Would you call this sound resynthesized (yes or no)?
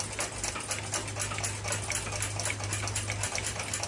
no